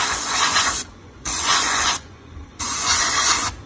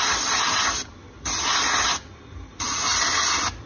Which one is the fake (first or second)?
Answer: first